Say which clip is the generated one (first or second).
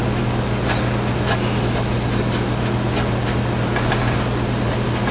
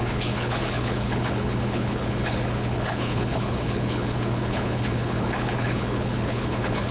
second